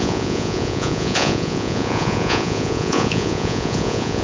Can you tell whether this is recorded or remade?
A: remade